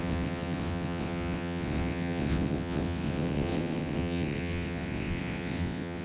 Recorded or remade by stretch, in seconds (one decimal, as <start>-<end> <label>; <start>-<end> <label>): 0.0-6.0 remade